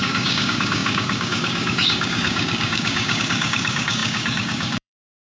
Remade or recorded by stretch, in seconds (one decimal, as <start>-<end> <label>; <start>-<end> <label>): 0.0-5.4 remade